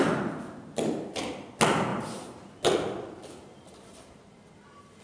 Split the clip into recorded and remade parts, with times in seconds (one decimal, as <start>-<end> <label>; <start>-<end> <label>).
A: 0.0-5.0 recorded